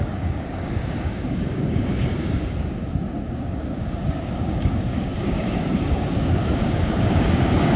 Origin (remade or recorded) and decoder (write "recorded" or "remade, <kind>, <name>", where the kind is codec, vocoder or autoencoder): remade, codec, DAC